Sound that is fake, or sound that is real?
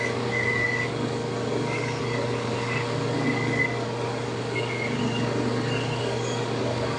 fake